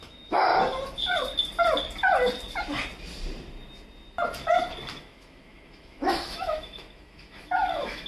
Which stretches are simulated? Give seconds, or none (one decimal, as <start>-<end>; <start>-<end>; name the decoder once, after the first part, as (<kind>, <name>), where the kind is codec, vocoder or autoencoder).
0.0-0.5 (autoencoder, DAC-VAE); 5.0-8.1